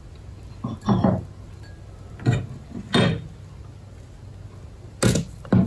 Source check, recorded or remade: recorded